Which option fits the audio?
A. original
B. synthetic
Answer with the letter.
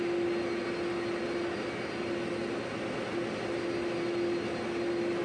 A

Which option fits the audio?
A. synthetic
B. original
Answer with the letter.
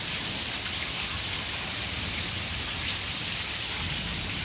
B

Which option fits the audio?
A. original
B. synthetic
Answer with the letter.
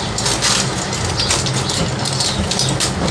A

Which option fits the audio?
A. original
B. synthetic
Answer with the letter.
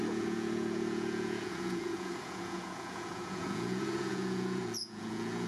B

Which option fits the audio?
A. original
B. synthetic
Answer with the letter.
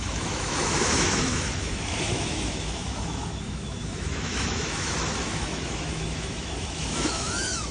B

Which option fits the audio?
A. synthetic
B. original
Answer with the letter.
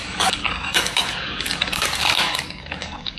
A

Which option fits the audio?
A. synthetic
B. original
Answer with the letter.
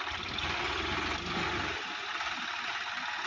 B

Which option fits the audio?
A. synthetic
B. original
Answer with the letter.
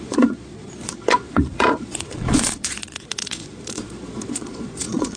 A